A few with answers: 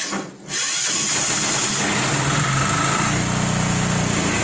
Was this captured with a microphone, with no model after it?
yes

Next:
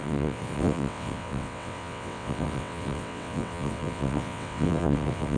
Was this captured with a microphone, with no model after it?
no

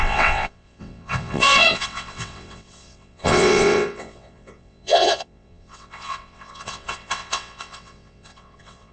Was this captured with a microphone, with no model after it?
no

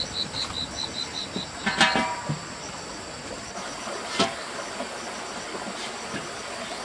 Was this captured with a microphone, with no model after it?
yes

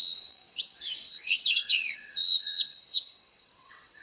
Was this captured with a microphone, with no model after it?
no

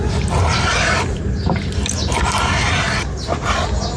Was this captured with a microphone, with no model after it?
yes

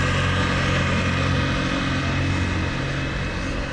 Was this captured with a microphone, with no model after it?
yes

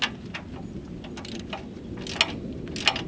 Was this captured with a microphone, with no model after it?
yes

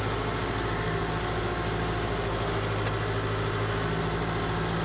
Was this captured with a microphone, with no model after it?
yes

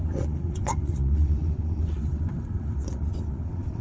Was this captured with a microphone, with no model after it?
no